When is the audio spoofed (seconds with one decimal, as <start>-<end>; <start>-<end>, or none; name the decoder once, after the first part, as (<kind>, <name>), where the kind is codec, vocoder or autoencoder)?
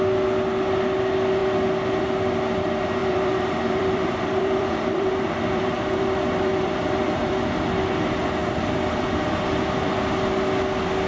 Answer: 3.0-7.3 (vocoder, BigVGAN v2)